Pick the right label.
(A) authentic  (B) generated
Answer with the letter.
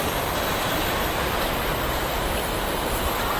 A